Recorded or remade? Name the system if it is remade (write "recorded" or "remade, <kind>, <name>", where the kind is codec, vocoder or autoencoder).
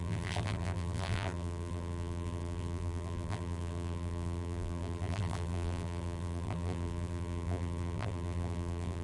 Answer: remade, vocoder, BigVGAN v2